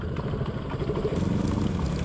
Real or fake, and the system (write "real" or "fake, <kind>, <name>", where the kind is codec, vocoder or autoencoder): real